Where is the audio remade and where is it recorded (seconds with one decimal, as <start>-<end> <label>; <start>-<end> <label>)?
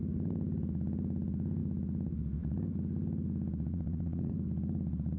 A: 0.0-3.7 recorded; 3.7-4.3 remade; 4.3-5.2 recorded